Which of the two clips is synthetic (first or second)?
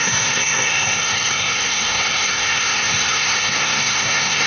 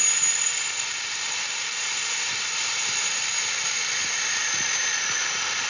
first